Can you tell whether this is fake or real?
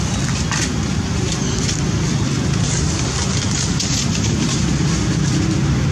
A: real